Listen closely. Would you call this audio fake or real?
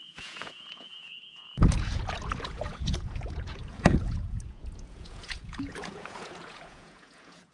fake